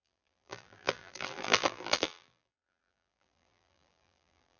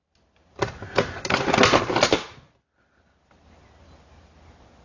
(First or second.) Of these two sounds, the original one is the second